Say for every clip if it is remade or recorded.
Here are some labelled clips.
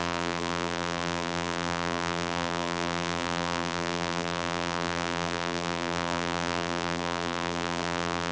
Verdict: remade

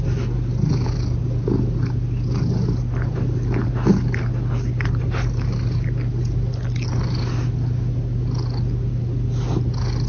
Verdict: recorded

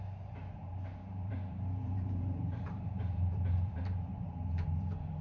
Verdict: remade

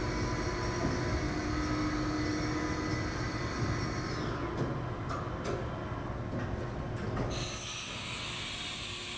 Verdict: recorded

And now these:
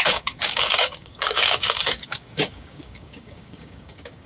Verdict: remade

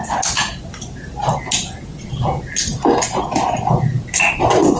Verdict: recorded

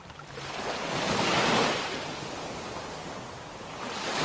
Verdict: recorded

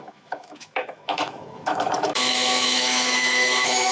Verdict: remade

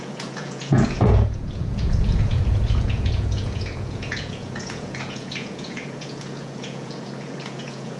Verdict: remade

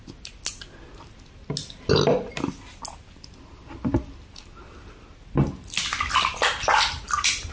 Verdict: recorded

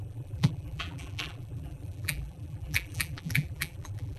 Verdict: remade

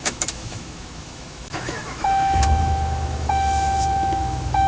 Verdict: remade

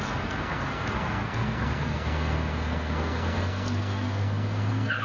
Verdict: remade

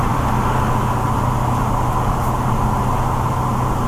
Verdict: recorded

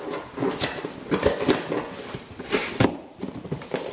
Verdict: recorded